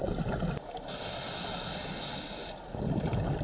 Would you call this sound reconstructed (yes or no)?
no